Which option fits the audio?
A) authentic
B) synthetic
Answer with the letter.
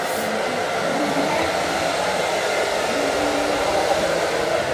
B